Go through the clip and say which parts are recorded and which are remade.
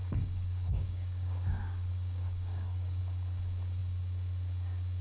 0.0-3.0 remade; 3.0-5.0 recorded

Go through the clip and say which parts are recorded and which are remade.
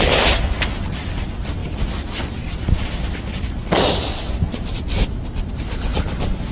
0.0-1.6 recorded; 1.6-5.5 remade; 5.5-6.5 recorded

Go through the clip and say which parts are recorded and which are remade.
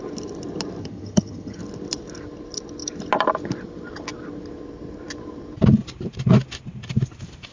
0.0-0.8 recorded; 0.8-1.6 remade; 1.6-7.5 recorded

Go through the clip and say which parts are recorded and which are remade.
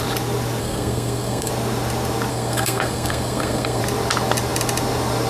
0.0-0.6 recorded; 0.6-1.5 remade; 1.5-2.3 recorded; 2.3-3.8 remade; 3.8-5.3 recorded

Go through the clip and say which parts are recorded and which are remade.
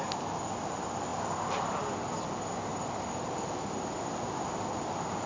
0.0-5.3 recorded